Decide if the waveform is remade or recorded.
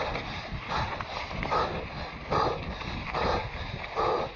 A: recorded